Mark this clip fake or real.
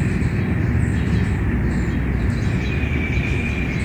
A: real